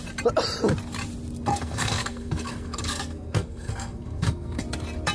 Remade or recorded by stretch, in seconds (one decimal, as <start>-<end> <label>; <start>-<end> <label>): 0.0-1.5 recorded; 1.5-4.6 remade; 4.6-5.1 recorded